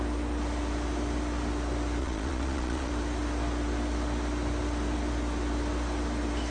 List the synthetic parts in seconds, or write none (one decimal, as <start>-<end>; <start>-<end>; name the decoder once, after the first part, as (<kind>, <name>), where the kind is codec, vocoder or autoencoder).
2.0-2.9 (vocoder, Vocos)